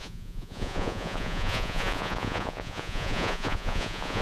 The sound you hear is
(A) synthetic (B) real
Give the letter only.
A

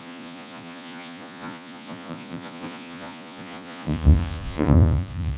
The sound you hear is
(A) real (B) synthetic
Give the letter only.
B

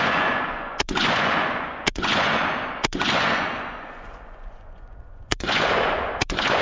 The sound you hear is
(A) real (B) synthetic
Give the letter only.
B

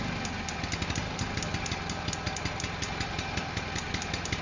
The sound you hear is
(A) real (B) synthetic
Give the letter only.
A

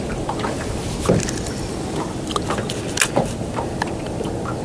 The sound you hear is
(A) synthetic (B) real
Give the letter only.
B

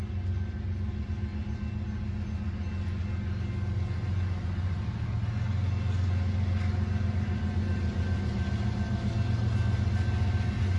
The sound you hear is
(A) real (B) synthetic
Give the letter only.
A